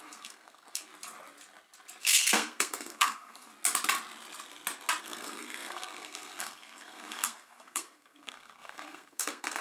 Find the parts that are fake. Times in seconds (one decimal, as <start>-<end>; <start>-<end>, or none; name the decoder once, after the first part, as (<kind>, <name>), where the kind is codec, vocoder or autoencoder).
0.0-0.9 (codec, SNAC); 2.0-3.5; 5.0-9.6